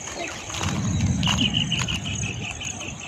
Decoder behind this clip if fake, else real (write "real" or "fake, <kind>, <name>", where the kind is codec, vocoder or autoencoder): real